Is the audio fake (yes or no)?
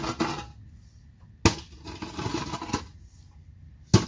no